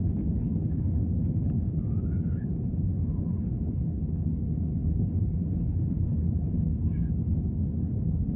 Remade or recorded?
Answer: remade